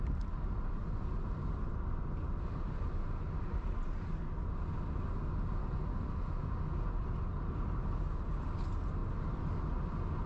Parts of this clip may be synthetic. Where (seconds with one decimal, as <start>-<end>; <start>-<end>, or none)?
none